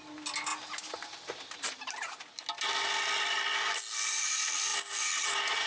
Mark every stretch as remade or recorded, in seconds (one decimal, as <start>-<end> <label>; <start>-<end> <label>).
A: 0.0-5.7 recorded